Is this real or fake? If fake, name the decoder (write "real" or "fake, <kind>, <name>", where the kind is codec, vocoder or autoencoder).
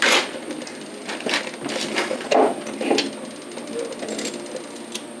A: real